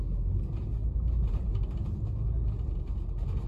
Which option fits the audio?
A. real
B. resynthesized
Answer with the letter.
A